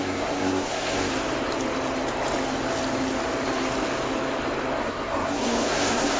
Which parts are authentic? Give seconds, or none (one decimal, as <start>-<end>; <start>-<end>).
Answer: 1.1-4.8